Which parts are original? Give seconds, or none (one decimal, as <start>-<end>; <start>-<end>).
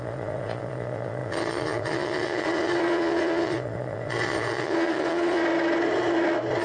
5.4-6.6